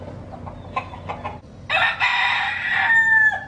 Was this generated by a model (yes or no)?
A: no